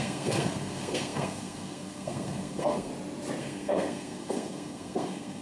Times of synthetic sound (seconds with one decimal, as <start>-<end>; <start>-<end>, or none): 0.0-2.9; 3.4-5.4

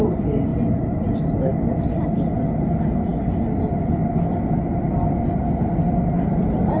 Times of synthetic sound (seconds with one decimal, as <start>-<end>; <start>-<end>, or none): none

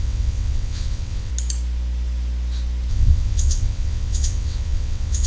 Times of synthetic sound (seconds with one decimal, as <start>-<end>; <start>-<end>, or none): 0.0-1.3; 2.9-5.3

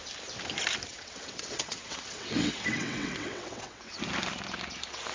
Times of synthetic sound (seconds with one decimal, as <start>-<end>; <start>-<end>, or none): 0.9-4.0